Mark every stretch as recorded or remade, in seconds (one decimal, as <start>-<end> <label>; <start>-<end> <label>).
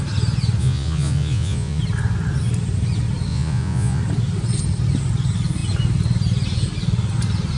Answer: 0.0-0.6 recorded; 0.6-1.8 remade; 1.8-3.3 recorded; 3.3-4.0 remade; 4.0-7.6 recorded